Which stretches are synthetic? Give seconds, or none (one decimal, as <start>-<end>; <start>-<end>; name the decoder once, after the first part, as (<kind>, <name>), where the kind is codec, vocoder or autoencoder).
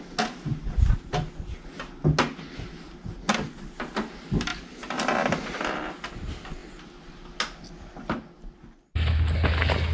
none